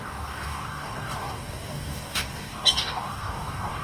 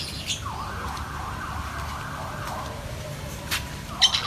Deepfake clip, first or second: first